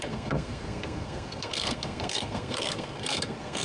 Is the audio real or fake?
fake